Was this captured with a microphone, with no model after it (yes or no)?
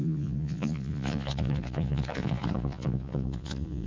no